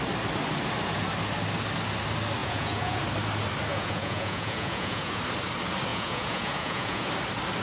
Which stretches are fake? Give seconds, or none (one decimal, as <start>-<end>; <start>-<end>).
2.4-3.0; 3.7-5.2; 5.9-7.1